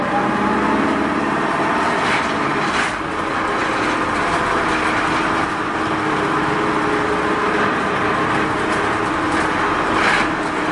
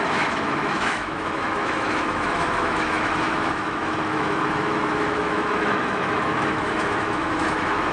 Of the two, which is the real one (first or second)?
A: first